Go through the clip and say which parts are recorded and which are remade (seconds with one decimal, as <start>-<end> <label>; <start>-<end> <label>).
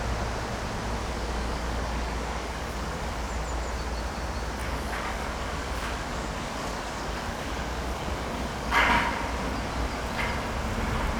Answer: 0.0-1.0 recorded; 1.0-3.3 remade; 3.3-4.6 recorded; 4.6-8.9 remade; 8.9-11.2 recorded